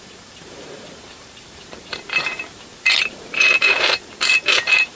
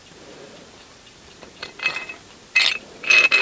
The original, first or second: second